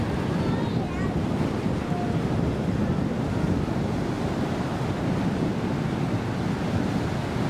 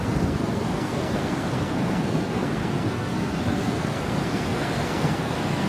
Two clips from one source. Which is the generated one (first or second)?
second